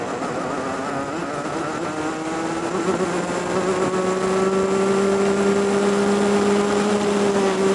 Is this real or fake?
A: real